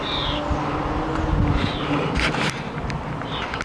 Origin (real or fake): real